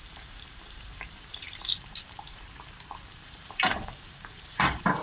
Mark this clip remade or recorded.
remade